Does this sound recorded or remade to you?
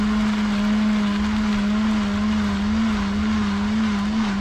recorded